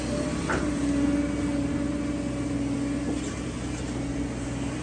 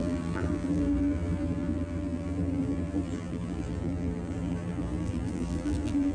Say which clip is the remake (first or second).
second